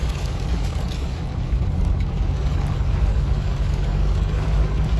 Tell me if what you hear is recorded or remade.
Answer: remade